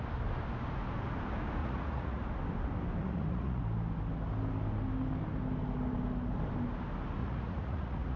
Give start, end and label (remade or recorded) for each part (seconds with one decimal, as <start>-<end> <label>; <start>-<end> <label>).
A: 0.0-1.6 recorded; 1.6-2.2 remade; 2.2-3.0 recorded; 3.0-3.6 remade; 3.6-7.2 recorded; 7.2-8.2 remade